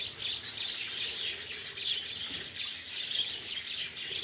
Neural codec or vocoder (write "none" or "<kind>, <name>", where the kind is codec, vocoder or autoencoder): none